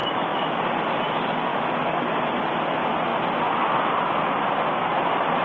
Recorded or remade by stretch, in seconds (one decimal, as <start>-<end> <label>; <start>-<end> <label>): 0.0-0.6 remade; 0.6-1.5 recorded; 1.5-2.3 remade; 2.3-5.4 recorded